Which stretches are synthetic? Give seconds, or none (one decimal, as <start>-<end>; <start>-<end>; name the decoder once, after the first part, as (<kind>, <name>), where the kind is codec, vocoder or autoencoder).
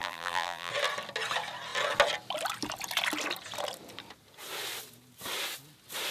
0.0-0.7 (vocoder, BigVGAN v2)